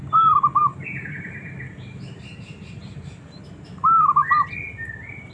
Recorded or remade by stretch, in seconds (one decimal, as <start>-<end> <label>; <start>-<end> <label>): 0.0-0.6 recorded; 0.6-3.5 remade; 3.5-5.3 recorded